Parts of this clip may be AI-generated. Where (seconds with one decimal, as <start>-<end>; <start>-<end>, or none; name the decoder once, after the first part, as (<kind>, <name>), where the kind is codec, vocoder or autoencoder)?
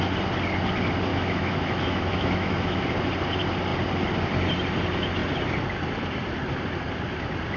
1.1-2.8 (autoencoder, DAC-VAE)